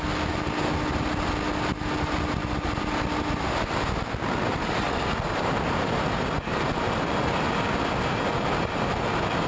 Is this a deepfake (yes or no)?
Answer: no